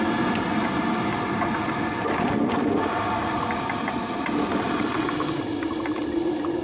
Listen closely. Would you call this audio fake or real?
real